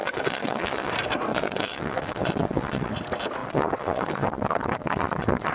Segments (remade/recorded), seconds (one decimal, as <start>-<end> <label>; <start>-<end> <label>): 0.0-0.9 remade; 0.9-1.3 recorded; 1.3-2.9 remade; 2.9-3.4 recorded; 3.4-5.5 remade